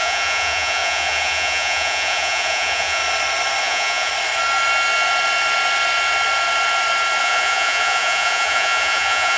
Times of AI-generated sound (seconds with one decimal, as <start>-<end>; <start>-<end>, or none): 0.0-3.0; 3.6-4.1; 7.2-9.4